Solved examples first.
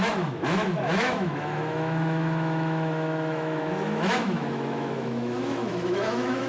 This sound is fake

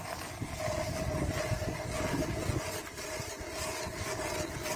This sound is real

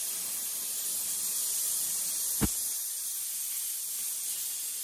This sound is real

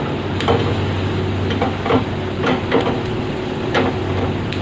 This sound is real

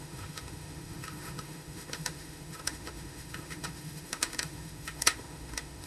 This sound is fake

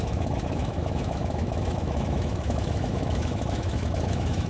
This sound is fake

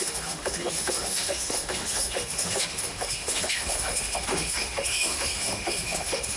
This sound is fake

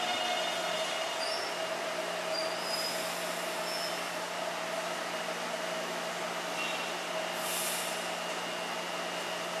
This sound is real